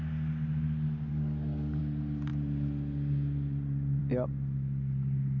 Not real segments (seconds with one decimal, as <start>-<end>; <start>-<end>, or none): 1.1-1.8